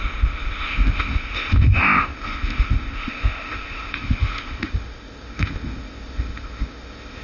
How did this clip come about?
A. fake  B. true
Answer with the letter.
A